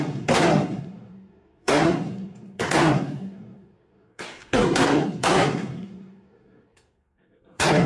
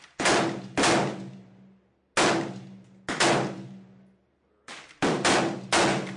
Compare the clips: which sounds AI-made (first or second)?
first